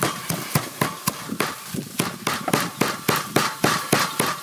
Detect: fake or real real